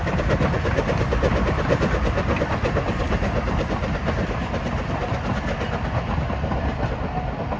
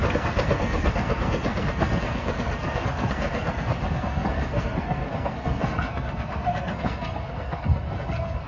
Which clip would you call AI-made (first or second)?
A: second